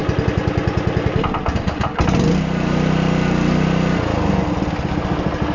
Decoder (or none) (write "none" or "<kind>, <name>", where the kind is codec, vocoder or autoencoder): none